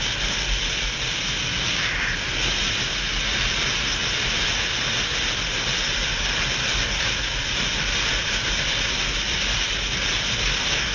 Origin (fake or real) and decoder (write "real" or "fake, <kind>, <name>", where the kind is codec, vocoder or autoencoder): real